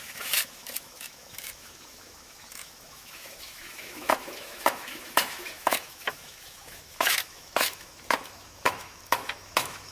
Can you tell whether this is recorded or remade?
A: remade